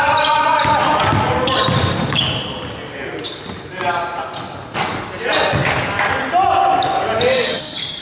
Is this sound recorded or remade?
recorded